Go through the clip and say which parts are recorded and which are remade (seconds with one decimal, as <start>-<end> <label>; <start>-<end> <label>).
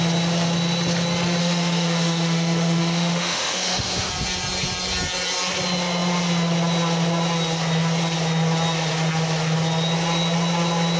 0.0-1.4 recorded; 1.4-4.1 remade; 4.1-11.0 recorded